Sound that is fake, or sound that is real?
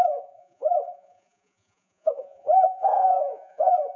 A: fake